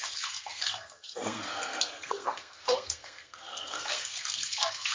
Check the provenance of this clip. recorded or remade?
remade